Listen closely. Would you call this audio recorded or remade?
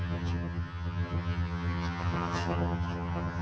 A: remade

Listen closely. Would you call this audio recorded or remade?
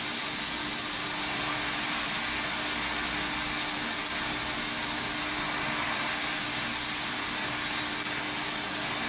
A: recorded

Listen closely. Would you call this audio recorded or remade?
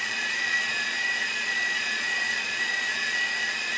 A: remade